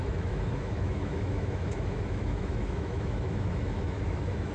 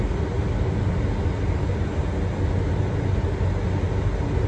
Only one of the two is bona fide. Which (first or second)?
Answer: second